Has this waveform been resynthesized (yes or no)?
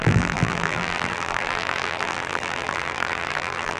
yes